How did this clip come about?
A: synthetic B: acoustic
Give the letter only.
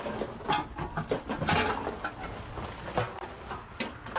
B